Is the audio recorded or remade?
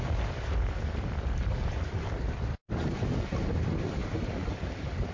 recorded